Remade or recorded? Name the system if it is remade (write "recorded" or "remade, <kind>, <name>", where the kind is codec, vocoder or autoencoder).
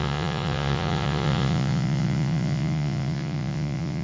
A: remade, vocoder, Vocos